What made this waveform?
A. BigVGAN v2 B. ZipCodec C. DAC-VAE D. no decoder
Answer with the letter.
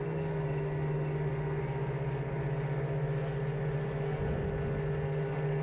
D